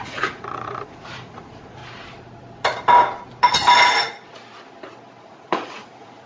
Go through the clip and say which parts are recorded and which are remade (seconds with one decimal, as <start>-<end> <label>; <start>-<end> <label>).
0.0-1.8 remade; 1.8-5.2 recorded; 5.2-6.3 remade